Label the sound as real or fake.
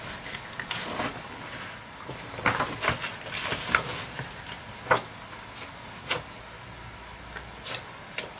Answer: real